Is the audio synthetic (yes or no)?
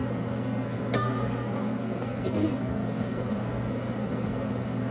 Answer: yes